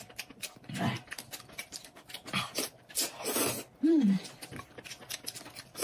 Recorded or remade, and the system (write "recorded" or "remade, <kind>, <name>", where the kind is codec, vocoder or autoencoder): recorded